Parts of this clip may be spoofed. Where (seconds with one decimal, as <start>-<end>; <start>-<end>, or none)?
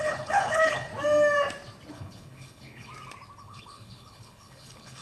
0.0-0.9; 1.9-2.9; 3.4-5.0